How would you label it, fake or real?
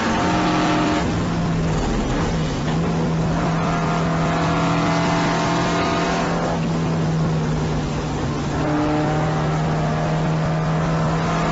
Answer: real